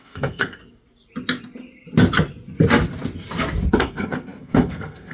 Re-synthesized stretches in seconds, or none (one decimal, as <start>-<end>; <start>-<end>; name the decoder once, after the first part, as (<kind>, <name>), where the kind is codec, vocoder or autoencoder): 0.0-0.6 (codec, SNAC); 3.7-5.1